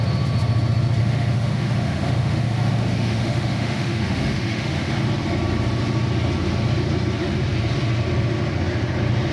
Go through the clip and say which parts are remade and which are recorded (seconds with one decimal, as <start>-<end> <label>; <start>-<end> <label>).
0.0-1.0 recorded; 1.0-4.9 remade; 4.9-9.3 recorded